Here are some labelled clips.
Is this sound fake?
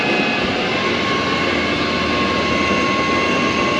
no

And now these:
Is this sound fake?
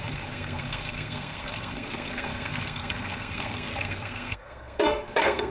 yes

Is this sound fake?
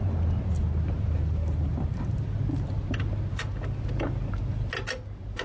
no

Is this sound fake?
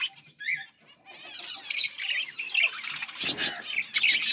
no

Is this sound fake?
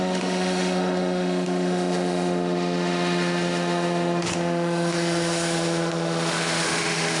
yes